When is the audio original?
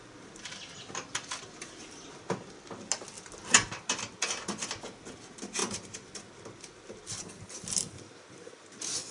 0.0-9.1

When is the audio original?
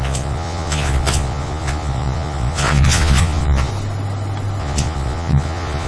3.7-4.6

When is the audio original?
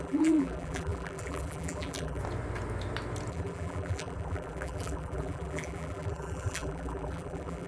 2.2-3.3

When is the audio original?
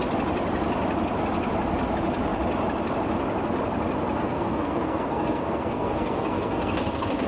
0.0-4.2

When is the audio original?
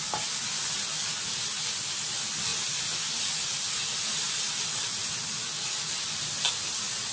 0.0-7.1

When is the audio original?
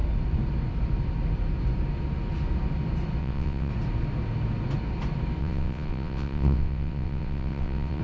0.0-3.2; 3.7-5.4